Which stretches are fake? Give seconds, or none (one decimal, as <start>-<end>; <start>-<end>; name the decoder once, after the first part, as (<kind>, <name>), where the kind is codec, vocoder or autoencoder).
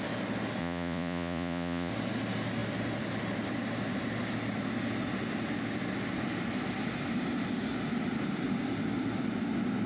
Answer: 0.6-1.9 (vocoder, Vocos)